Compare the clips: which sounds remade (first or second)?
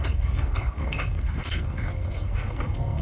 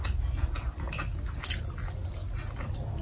first